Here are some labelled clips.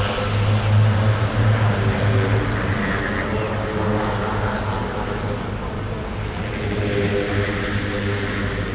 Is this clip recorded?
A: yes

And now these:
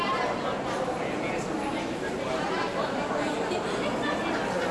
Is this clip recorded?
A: yes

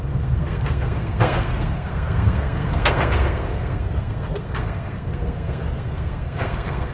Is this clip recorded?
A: no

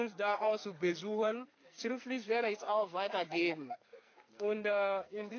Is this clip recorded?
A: no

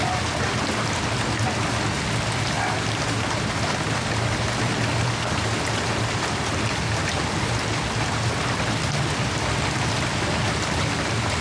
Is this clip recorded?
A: yes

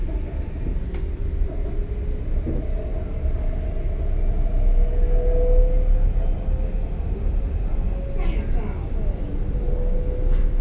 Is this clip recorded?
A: yes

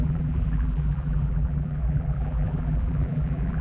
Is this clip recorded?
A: no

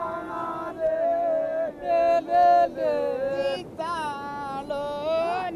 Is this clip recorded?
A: yes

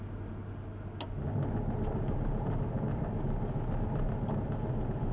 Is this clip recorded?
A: yes